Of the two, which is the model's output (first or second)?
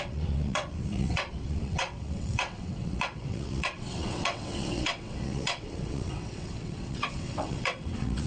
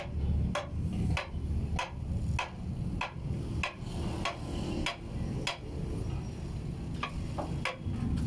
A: first